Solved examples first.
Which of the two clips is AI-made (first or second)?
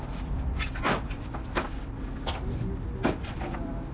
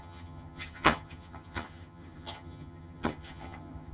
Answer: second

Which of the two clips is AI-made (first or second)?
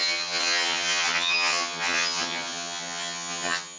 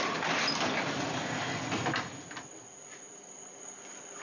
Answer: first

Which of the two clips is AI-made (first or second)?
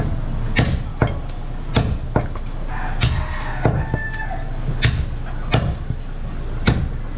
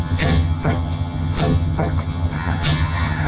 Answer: second